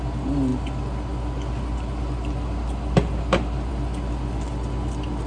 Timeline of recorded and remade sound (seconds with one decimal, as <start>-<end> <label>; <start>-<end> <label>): 0.0-5.3 recorded